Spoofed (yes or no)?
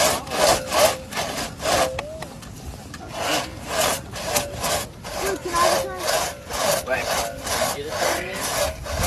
no